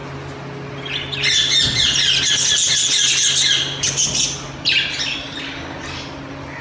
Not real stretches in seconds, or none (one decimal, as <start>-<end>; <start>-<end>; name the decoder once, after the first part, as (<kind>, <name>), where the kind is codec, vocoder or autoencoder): none